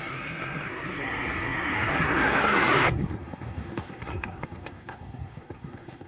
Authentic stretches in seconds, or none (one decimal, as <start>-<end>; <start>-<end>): none

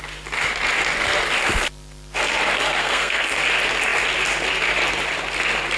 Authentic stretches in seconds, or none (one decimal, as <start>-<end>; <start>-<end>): 0.0-2.8; 3.4-5.8

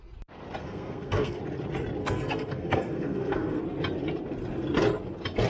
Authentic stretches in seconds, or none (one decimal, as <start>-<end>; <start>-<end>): 0.0-0.6; 1.4-2.0; 3.6-5.5